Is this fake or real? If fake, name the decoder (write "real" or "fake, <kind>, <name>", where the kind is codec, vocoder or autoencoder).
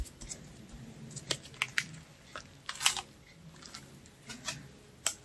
real